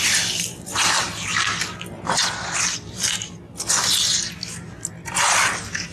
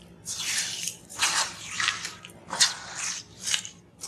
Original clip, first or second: first